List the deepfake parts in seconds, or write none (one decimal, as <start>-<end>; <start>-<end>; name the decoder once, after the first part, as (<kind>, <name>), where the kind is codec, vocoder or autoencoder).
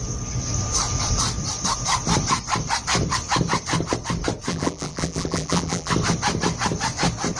4.5-5.9 (vocoder, BigVGAN v2)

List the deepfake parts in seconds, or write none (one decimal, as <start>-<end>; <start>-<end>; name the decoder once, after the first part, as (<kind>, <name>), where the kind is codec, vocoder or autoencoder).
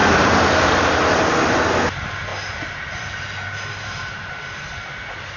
0.0-0.8 (vocoder, BigVGAN v2); 2.3-4.7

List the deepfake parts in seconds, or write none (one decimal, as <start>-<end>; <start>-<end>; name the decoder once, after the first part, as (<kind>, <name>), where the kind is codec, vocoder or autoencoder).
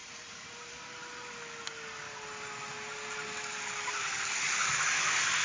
0.0-0.7 (vocoder, BigVGAN v2)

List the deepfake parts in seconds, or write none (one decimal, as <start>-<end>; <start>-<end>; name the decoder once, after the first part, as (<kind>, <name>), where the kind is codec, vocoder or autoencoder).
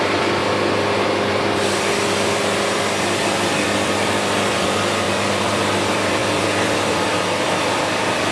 0.0-0.4 (vocoder, BigVGAN v2); 1.3-8.3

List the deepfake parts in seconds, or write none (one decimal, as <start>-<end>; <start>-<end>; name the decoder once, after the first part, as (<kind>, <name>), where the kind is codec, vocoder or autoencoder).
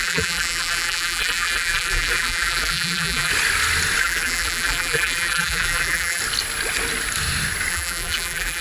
0.0-3.3 (vocoder, BigVGAN v2); 4.0-6.2; 7.7-8.6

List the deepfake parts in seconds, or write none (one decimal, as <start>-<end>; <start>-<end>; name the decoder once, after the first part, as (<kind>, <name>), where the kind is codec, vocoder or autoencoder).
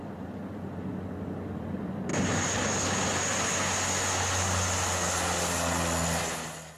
0.0-2.1 (vocoder, BigVGAN v2); 6.2-6.8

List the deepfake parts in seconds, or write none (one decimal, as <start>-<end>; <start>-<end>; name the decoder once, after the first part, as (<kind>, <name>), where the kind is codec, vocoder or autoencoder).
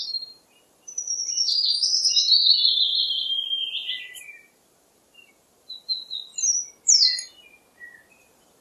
0.0-1.8 (vocoder, BigVGAN v2); 2.4-6.3; 8.1-8.6